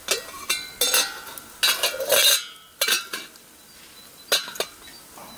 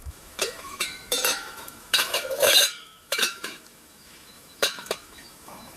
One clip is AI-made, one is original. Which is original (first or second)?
first